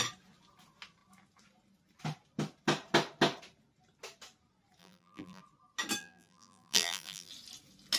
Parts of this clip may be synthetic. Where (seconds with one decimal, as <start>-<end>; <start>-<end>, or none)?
4.8-5.4; 6.0-7.3

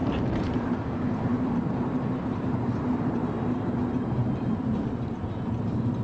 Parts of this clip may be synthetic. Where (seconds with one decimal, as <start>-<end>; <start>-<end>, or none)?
0.0-0.7; 1.3-3.8; 4.2-5.3

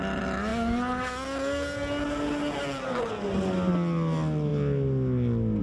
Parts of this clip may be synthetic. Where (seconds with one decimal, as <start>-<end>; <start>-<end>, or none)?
none

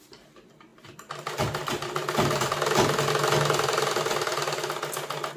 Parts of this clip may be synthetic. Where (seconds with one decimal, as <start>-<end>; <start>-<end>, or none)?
none

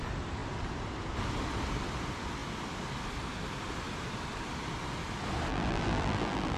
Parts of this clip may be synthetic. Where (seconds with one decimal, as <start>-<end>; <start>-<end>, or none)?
5.5-6.6

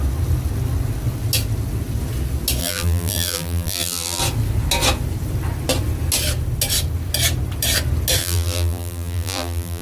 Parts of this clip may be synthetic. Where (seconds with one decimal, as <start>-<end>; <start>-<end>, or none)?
2.6-4.2; 8.2-9.8

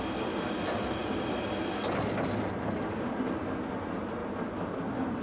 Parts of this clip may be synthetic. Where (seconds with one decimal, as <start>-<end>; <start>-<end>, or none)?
none